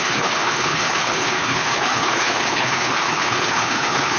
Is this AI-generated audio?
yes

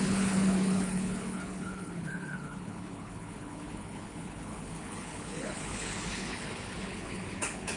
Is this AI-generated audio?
yes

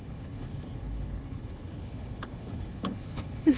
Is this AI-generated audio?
yes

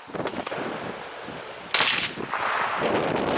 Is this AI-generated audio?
no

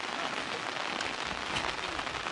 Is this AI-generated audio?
no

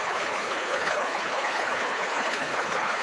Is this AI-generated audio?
yes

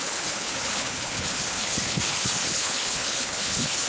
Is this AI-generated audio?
yes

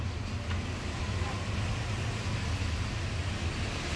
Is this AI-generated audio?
no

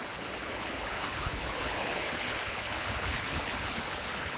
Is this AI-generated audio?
yes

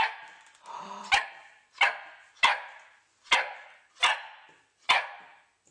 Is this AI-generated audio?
no